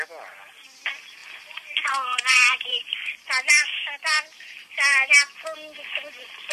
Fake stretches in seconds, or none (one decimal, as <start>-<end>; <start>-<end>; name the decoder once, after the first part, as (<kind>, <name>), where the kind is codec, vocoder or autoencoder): 1.2-5.1 (vocoder, BigVGAN v2)